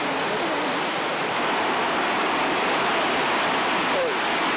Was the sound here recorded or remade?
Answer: recorded